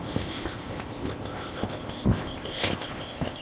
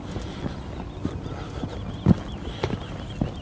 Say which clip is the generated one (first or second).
first